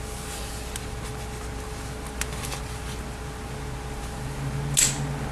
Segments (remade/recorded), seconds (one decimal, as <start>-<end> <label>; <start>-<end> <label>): 0.0-5.3 recorded